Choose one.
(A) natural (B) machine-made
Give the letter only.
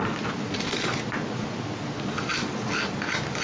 A